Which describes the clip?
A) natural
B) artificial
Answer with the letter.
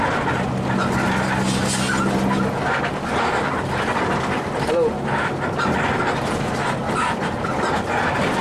A